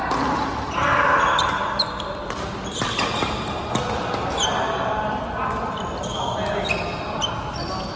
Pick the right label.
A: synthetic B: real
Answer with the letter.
B